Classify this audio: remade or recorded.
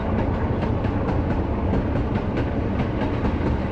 recorded